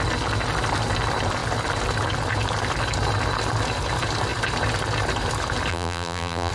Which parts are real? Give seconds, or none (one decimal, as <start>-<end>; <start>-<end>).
0.0-5.7